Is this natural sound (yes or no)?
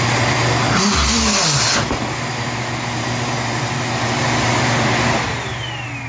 yes